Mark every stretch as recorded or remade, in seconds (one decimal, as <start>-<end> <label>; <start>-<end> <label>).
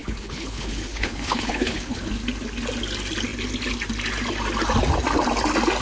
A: 0.0-2.1 remade; 2.1-5.8 recorded